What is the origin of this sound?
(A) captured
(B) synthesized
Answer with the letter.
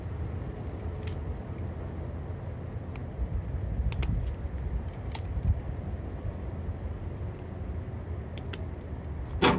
A